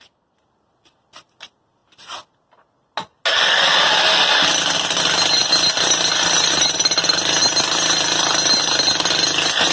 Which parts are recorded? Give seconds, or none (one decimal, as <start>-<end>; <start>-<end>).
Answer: 0.0-9.7